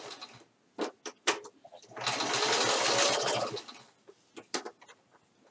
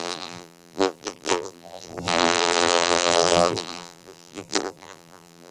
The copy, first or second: second